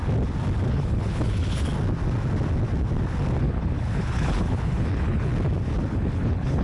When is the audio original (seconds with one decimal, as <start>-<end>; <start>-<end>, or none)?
0.0-0.7; 1.7-3.4; 5.3-5.9